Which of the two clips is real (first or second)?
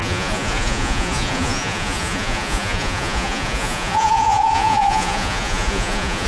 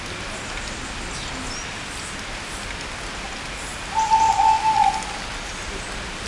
second